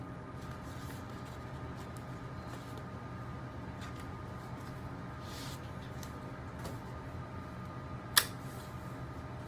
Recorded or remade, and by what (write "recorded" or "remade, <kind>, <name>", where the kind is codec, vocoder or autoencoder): recorded